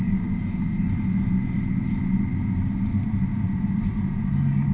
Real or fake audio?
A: real